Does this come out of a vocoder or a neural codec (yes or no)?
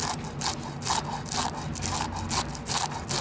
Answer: no